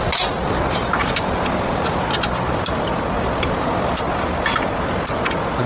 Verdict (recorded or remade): recorded